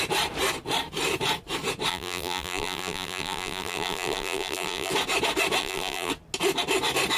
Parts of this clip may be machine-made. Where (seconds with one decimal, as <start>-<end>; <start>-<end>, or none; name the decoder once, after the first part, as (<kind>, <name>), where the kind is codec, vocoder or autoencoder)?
1.9-4.9 (vocoder, BigVGAN v2); 5.6-6.1